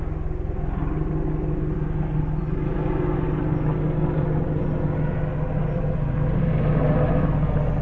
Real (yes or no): yes